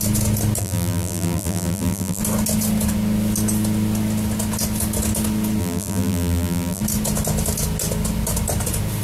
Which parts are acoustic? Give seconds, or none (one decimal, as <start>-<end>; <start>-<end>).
0.0-0.6; 2.2-5.6; 6.8-9.0